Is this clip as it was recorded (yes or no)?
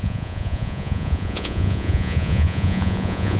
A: no